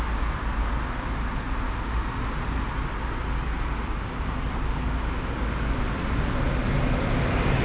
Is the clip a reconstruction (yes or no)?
no